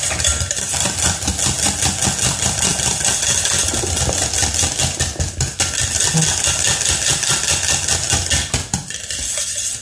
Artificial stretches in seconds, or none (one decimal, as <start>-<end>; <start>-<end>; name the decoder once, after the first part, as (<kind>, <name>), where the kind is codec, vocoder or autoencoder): none